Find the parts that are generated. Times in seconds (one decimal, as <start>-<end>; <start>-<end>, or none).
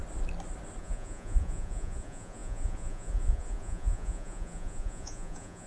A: 0.8-5.7